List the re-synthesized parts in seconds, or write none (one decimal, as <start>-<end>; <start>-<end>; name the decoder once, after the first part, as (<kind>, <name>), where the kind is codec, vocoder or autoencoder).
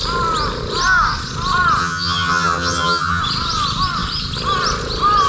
1.8-3.2 (vocoder, HiFi-GAN)